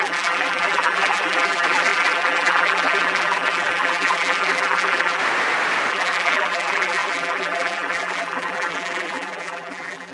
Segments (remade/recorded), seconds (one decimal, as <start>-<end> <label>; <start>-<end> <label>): 0.0-5.2 remade; 5.2-5.9 recorded; 5.9-10.1 remade